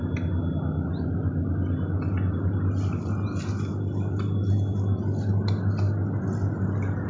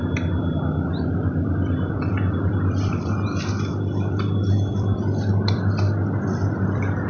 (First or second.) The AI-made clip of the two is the second